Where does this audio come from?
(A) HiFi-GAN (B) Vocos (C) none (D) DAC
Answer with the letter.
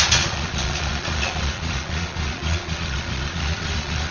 B